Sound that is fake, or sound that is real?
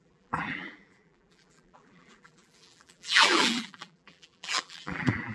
fake